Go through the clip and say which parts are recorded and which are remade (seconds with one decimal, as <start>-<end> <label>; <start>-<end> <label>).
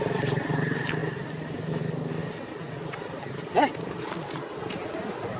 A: 0.0-5.4 recorded